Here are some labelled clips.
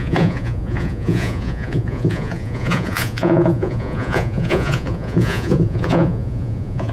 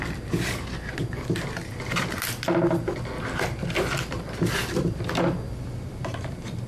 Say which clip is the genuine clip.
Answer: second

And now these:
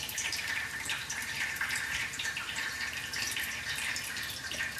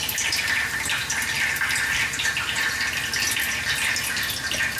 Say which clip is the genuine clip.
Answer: second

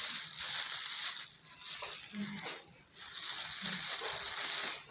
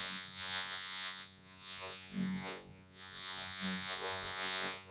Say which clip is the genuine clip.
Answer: first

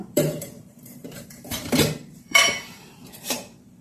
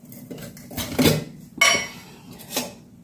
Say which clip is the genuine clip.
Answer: second